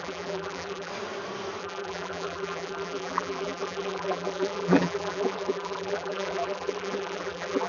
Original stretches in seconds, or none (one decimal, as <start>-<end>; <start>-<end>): 0.9-1.6